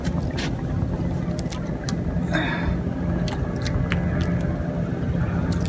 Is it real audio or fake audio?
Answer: real